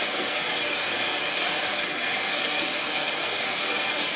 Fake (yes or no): yes